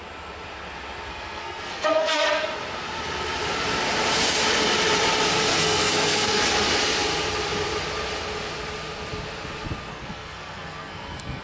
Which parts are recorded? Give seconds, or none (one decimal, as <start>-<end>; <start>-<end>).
0.0-1.1; 2.4-5.5; 6.4-9.9